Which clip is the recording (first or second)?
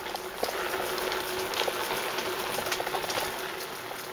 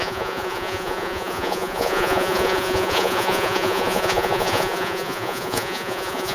first